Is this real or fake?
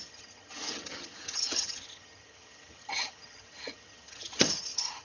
fake